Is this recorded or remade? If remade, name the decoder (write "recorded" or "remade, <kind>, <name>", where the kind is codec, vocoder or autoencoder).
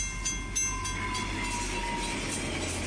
recorded